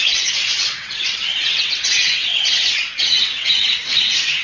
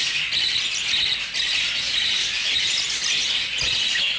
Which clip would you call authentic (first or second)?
second